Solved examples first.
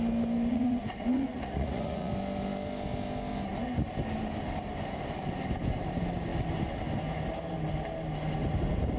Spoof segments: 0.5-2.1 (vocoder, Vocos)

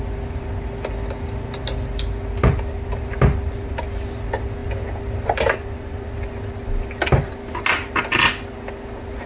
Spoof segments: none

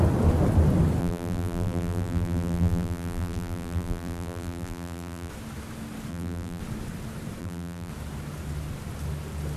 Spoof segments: 1.0-5.3 (vocoder, BigVGAN v2); 6.1-6.6; 7.4-7.9

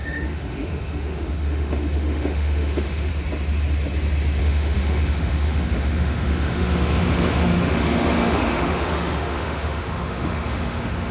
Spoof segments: 0.0-3.1 (autoencoder, DAC-VAE); 4.4-11.1